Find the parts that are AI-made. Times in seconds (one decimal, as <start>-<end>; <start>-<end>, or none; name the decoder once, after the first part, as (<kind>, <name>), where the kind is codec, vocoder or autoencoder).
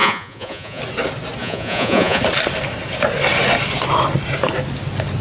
0.0-0.8 (vocoder, Vocos); 1.4-2.2